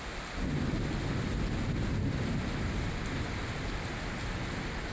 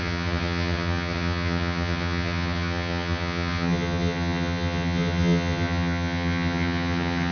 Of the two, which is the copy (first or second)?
second